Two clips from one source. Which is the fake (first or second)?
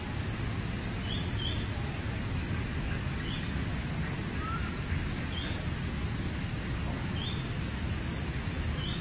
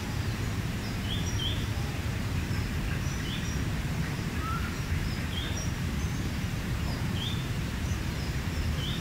second